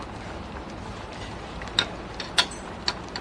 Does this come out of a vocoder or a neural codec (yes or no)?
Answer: no